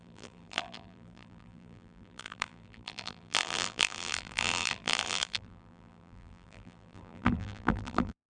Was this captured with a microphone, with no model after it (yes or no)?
no